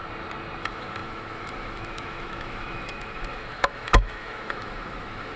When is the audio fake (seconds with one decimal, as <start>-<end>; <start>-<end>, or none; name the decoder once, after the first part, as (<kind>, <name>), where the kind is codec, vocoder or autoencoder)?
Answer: 0.6-5.4 (autoencoder, DAC-VAE)